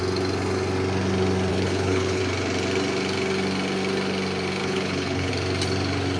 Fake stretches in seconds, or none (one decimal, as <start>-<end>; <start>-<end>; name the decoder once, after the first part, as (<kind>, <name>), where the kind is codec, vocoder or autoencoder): 1.5-2.2 (codec, HILCodec); 4.6-5.3